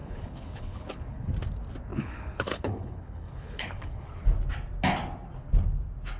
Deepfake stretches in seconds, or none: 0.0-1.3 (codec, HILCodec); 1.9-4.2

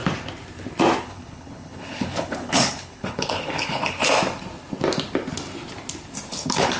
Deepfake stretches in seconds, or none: 1.0-4.0 (codec, HILCodec); 6.3-6.8

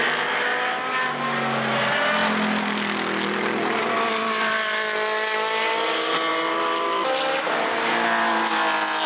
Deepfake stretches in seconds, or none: none

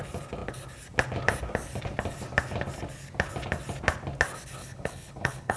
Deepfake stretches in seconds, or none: 4.6-5.6 (codec, HILCodec)

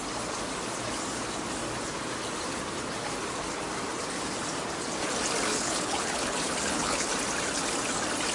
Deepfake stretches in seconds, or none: 5.5-7.1 (codec, HILCodec)